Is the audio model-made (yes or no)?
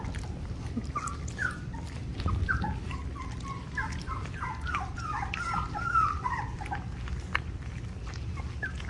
no